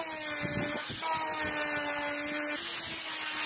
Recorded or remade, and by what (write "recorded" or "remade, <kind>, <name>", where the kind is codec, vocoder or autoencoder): recorded